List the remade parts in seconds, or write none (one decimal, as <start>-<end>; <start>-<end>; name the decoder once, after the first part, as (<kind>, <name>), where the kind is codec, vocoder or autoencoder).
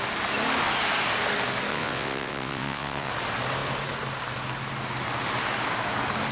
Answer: 1.7-3.1 (vocoder, WaveNeXt)